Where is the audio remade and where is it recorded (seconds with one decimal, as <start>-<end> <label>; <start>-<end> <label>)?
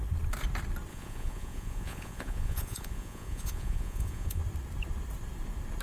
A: 0.0-0.9 recorded; 0.9-4.4 remade; 4.4-5.8 recorded